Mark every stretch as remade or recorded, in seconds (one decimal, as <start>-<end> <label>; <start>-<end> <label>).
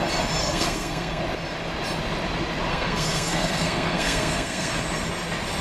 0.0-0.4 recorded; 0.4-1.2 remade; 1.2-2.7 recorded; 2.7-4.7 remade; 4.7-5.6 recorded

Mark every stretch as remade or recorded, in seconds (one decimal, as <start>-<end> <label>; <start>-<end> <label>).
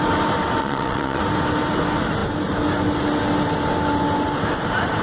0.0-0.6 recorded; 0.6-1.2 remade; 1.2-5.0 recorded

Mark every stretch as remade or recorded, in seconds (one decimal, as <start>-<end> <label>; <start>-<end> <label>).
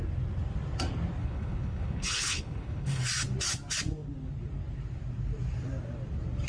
0.0-1.2 recorded; 1.2-3.0 remade; 3.0-6.5 recorded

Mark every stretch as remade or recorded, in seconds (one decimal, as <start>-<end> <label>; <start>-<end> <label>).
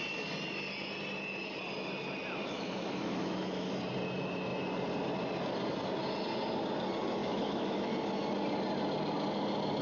0.0-2.4 recorded; 2.4-3.7 remade; 3.7-7.2 recorded; 7.2-7.9 remade; 7.9-9.8 recorded